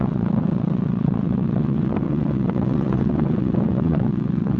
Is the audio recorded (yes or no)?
no